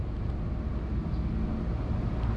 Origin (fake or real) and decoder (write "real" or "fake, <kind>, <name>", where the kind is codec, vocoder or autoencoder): real